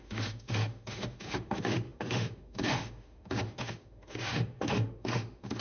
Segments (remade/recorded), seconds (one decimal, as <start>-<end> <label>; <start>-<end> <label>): 0.0-5.6 remade